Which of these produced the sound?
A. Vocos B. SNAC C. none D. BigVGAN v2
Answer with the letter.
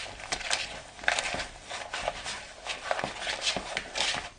C